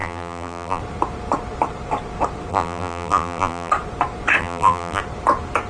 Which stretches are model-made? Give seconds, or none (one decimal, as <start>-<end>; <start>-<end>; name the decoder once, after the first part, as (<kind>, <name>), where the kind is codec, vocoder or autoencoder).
0.0-0.8 (vocoder, BigVGAN v2); 2.5-3.7; 4.4-5.0